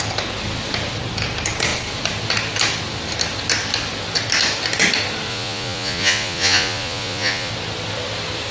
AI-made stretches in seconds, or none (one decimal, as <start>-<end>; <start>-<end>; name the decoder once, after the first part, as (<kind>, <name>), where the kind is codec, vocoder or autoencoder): 5.3-7.5 (vocoder, Vocos)